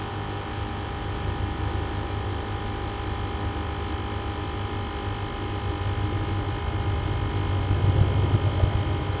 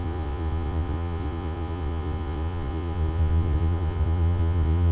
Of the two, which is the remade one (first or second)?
second